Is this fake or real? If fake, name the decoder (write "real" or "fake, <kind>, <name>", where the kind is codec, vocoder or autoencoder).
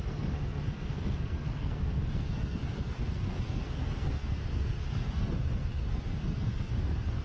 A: fake, codec, SNAC